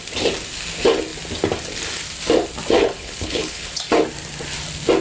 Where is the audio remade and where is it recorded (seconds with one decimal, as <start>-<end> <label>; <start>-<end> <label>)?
0.0-2.8 recorded; 2.8-3.8 remade; 3.8-5.0 recorded